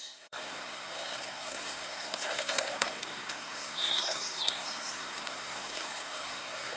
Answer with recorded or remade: remade